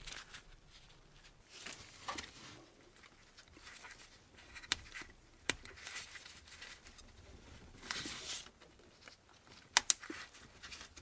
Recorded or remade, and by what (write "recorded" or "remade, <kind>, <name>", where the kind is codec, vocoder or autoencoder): recorded